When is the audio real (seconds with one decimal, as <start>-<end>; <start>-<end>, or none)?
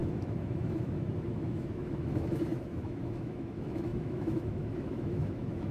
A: none